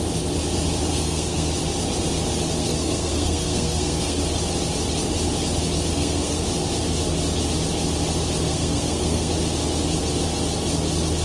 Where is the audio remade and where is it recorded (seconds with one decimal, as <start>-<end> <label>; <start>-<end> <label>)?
0.0-0.9 recorded; 0.9-1.5 remade; 1.5-2.6 recorded; 2.6-4.2 remade; 4.2-5.9 recorded; 5.9-6.4 remade; 6.4-8.5 recorded; 8.5-9.3 remade; 9.3-11.2 recorded